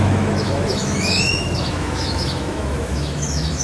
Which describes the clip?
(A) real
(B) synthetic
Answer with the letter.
B